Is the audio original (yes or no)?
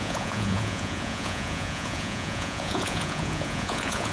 no